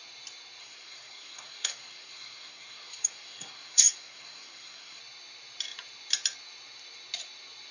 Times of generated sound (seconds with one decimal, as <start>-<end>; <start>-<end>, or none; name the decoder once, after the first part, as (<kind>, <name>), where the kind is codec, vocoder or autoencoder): 0.6-5.0 (codec, SNAC)